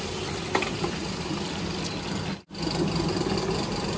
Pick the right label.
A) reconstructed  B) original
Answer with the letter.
B